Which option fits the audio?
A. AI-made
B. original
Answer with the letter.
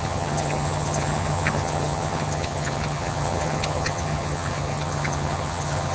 A